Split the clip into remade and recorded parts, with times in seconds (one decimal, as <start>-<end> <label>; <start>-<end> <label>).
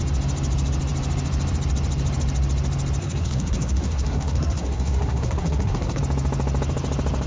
0.0-3.0 recorded; 3.0-6.0 remade; 6.0-7.3 recorded